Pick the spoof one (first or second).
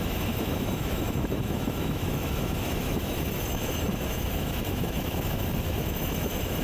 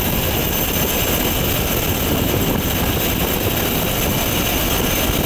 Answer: first